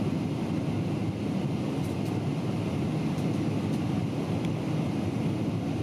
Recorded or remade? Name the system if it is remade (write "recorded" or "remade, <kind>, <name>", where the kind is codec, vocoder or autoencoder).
recorded